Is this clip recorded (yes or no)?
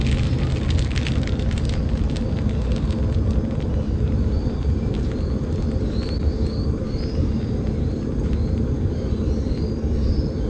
yes